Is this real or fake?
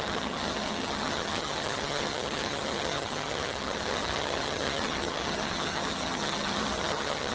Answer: fake